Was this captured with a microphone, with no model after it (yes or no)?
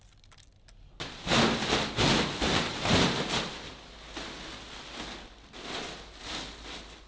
yes